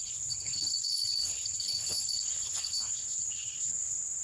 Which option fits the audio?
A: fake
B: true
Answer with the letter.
A